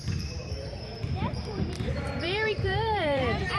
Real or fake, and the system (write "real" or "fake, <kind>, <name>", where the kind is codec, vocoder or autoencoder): fake, vocoder, BigVGAN v2